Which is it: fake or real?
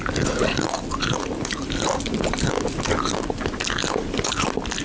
real